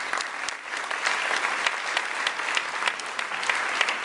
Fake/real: real